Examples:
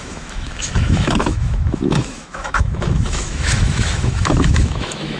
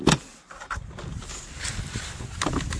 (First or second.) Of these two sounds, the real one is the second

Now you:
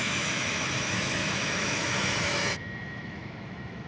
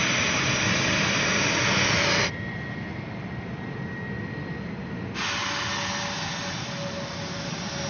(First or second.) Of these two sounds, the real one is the second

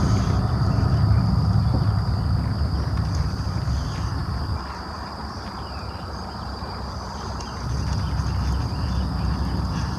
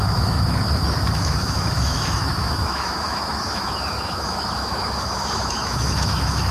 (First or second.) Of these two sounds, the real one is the first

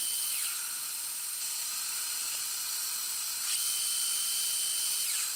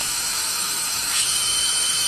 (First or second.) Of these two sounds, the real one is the first